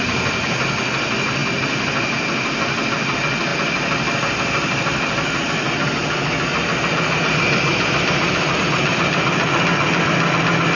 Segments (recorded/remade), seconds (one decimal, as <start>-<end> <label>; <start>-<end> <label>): 0.0-10.8 recorded